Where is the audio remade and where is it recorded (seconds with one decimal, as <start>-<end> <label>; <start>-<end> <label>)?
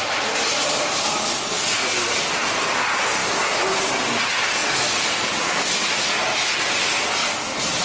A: 0.0-7.8 recorded